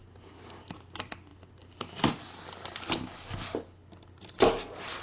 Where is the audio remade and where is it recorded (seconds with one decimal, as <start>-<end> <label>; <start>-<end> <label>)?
0.0-5.0 recorded